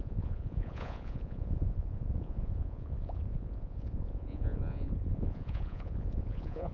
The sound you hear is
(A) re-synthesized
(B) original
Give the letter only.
A